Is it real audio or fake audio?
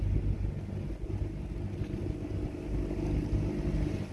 real